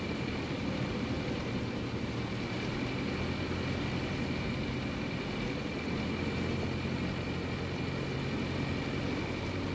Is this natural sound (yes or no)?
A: yes